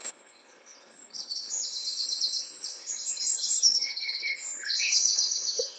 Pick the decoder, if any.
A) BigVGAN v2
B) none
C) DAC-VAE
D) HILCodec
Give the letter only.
D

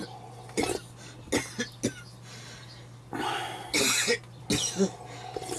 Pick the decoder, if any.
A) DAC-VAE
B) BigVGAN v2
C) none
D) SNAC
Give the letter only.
C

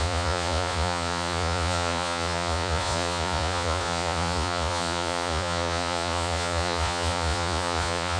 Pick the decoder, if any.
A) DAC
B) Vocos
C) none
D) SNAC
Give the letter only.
B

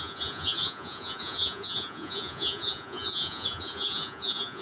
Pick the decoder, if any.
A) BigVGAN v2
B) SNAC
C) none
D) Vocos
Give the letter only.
D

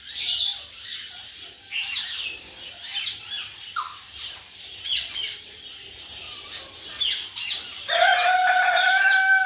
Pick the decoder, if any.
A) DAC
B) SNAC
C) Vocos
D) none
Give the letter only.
D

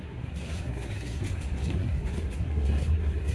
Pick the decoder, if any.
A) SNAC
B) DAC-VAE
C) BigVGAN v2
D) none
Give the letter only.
A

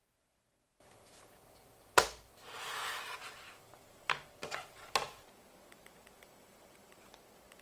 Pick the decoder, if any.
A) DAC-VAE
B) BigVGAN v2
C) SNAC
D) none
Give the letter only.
D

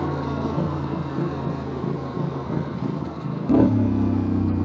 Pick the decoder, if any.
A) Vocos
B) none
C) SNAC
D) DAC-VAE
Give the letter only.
C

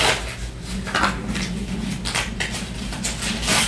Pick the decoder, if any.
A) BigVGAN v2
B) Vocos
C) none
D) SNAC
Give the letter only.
C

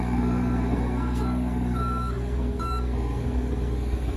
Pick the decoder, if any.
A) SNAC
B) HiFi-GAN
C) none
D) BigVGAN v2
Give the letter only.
A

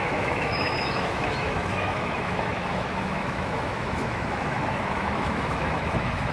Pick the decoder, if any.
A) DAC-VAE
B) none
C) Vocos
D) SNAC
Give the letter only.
A